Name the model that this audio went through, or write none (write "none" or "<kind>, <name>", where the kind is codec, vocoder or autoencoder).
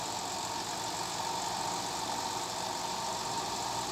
none